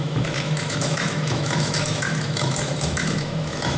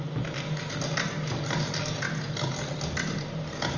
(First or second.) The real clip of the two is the second